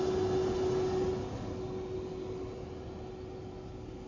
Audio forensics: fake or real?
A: real